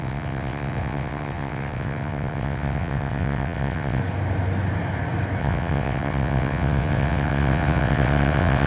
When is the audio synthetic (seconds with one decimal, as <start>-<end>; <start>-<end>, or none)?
0.0-4.0; 5.4-8.7